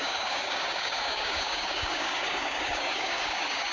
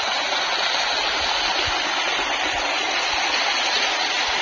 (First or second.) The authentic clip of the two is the second